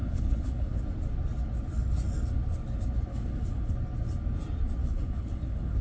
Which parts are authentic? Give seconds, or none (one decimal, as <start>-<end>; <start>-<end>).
0.8-3.1; 3.7-4.8